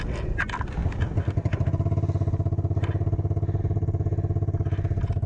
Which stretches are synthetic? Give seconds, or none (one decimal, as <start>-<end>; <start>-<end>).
none